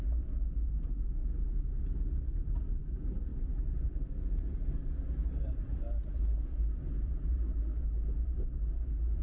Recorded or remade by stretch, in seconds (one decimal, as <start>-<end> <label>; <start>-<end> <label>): 0.0-1.2 remade; 1.2-2.7 recorded; 2.7-9.2 remade